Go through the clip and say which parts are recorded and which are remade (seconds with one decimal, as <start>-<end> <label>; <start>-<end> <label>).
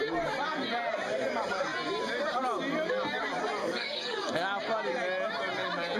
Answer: 0.0-3.6 recorded; 3.6-4.3 remade; 4.3-6.0 recorded